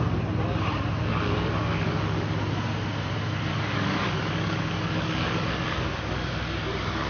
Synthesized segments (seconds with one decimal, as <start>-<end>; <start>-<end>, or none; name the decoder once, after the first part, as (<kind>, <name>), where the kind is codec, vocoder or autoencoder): 1.1-2.0 (codec, DAC); 3.5-7.1